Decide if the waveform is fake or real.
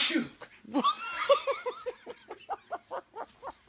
real